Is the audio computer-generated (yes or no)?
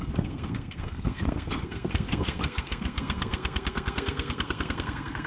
yes